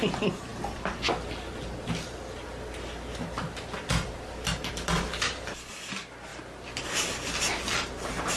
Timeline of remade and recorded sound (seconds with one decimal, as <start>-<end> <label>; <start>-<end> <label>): 0.0-8.4 recorded